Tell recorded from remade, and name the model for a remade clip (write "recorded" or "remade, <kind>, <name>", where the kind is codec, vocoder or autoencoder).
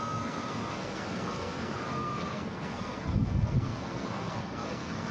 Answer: remade, codec, SNAC